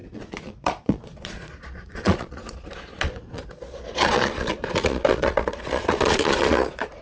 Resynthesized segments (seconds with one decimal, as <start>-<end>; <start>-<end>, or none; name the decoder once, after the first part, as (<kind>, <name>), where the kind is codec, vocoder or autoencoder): 0.0-7.0 (vocoder, Vocos)